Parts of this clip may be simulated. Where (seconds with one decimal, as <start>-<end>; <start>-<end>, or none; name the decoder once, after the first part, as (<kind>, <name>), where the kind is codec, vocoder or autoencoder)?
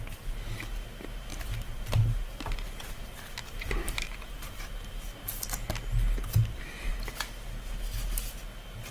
1.3-4.9 (vocoder, BigVGAN v2)